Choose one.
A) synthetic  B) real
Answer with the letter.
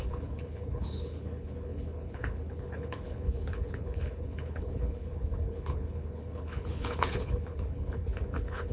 A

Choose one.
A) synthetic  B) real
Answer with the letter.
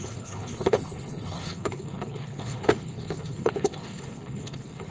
A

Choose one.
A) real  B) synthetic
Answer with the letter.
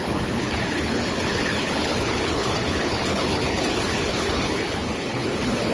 B